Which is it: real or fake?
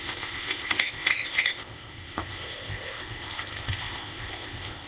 fake